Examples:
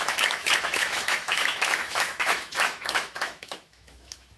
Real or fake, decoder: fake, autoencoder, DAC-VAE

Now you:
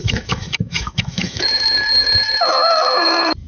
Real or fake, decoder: fake, autoencoder, DAC-VAE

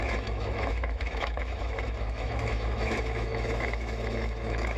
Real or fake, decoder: fake, autoencoder, DAC-VAE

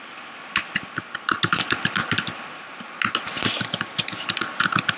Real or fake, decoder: real